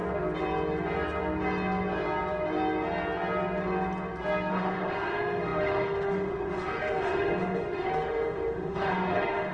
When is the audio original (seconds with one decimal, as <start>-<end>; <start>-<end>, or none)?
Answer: 0.0-4.5